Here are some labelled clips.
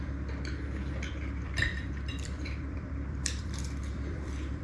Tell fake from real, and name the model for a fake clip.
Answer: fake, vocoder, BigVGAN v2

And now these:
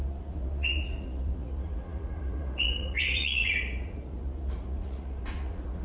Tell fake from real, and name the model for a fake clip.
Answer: fake, vocoder, Vocos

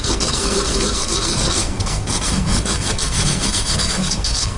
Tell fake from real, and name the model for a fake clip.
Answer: fake, codec, SNAC